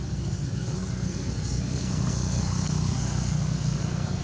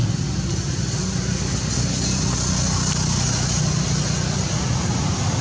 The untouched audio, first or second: second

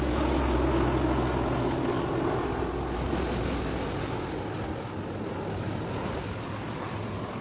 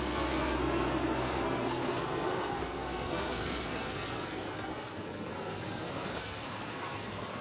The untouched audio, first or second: first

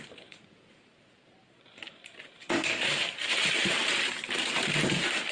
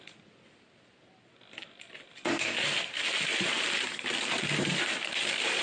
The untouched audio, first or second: second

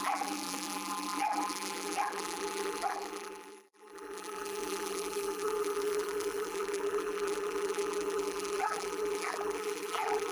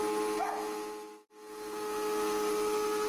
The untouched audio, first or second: second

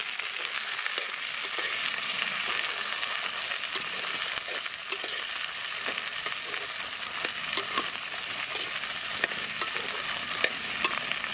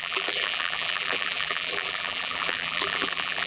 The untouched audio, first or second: first